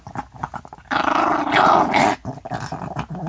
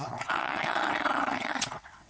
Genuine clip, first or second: first